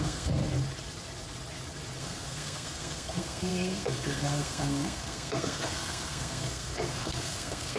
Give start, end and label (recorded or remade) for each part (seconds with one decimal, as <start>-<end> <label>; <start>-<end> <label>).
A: 0.0-0.4 remade; 0.4-2.0 recorded; 2.0-7.8 remade